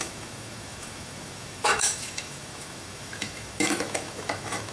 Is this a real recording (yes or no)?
no